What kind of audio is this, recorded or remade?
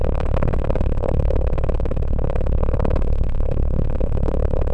remade